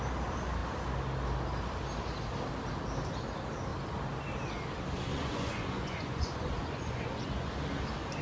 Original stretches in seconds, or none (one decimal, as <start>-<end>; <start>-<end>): 0.0-5.1; 7.5-8.2